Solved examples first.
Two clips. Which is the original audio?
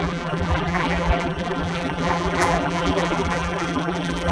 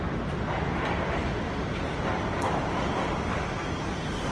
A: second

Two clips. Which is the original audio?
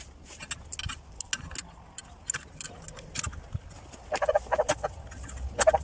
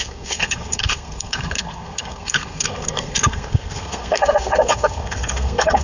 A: first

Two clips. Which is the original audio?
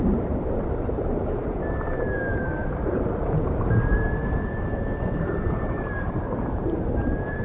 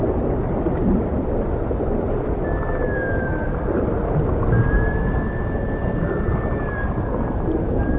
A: second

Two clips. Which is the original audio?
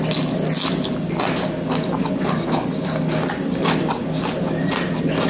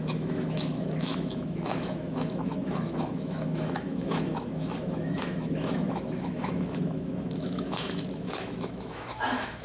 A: first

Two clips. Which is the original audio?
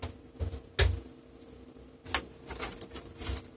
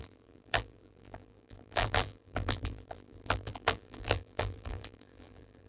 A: first